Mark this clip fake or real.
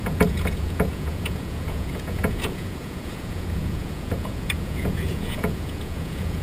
fake